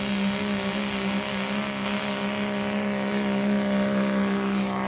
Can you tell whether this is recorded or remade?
recorded